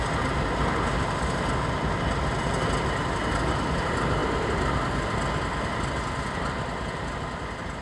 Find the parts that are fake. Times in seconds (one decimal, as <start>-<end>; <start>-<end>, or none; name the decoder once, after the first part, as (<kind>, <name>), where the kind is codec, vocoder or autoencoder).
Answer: none